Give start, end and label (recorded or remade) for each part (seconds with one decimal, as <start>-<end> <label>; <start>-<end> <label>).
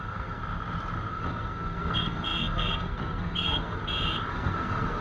0.0-0.4 remade; 0.4-1.1 recorded; 1.1-3.8 remade; 3.8-4.3 recorded; 4.3-5.0 remade